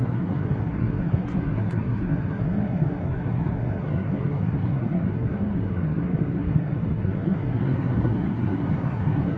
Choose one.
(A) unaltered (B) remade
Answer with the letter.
B